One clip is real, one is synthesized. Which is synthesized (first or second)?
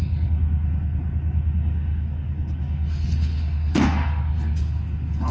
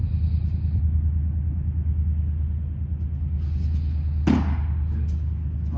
first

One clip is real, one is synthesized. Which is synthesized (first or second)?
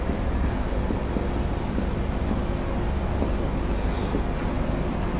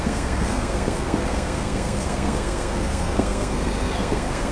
second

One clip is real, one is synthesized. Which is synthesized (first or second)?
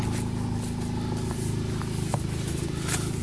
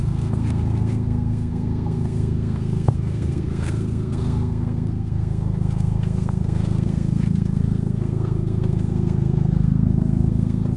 second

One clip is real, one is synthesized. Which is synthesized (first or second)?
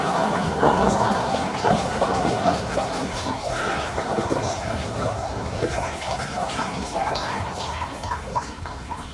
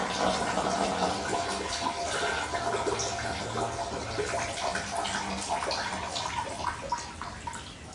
first